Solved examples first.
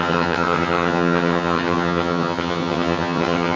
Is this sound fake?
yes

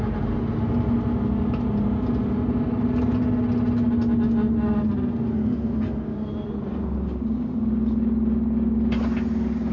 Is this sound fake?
no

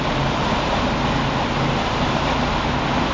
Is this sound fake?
no